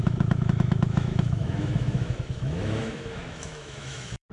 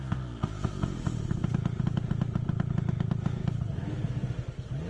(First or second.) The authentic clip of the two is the second